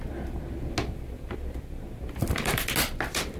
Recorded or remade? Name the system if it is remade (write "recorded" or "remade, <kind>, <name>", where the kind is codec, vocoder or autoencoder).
recorded